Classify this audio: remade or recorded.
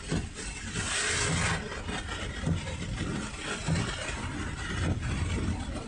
recorded